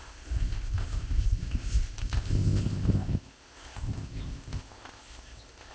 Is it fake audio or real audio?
fake